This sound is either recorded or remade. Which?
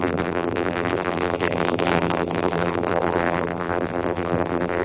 remade